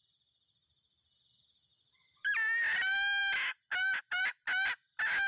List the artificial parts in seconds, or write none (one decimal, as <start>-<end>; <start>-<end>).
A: none